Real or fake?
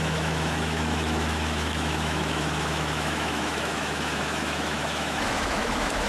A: fake